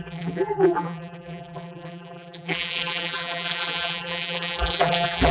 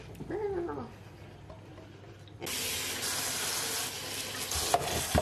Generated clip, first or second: first